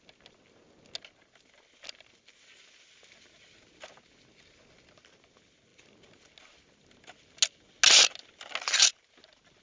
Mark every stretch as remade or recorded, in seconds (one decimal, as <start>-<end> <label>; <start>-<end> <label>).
0.0-9.6 recorded